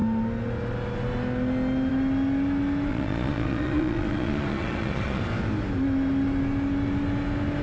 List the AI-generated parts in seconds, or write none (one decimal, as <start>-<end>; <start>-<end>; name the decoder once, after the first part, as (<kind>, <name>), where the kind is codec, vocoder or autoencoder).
2.9-5.2 (vocoder, Vocos)